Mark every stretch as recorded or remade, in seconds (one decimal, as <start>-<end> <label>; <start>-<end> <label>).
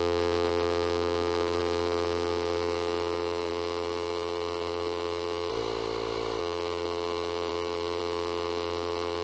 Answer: 0.0-5.5 remade; 5.5-6.4 recorded; 6.4-9.2 remade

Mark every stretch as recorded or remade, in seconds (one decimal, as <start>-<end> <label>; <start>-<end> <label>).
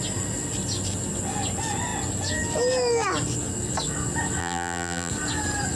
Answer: 0.0-4.4 recorded; 4.4-5.1 remade; 5.1-5.8 recorded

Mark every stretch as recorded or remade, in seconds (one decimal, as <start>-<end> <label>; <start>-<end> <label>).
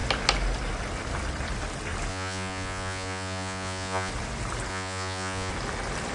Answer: 0.0-2.1 recorded; 2.1-4.1 remade; 4.1-4.7 recorded; 4.7-5.5 remade; 5.5-6.1 recorded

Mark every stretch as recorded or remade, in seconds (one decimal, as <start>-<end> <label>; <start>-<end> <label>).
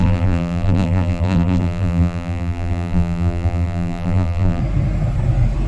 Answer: 0.0-4.6 remade; 4.6-5.7 recorded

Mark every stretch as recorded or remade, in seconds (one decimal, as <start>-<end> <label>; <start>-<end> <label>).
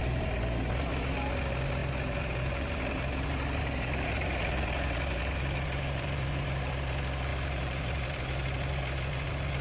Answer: 0.0-1.8 recorded; 1.8-6.7 remade; 6.7-7.3 recorded; 7.3-8.8 remade; 8.8-9.6 recorded